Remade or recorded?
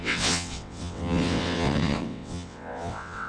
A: remade